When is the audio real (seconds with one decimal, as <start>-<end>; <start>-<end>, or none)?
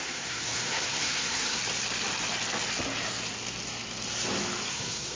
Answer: 1.6-4.7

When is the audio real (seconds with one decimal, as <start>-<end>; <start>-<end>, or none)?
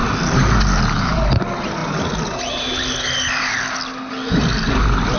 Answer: 0.0-5.2